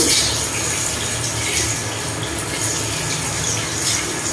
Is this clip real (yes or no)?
yes